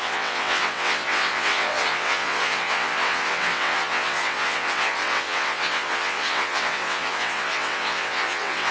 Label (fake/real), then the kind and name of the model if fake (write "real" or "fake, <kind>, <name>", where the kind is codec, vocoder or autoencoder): fake, vocoder, WaveNeXt